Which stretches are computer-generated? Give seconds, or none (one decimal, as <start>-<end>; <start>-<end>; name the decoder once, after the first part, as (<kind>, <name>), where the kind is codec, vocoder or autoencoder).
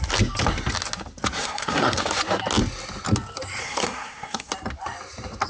1.4-2.0 (codec, SNAC); 3.6-4.5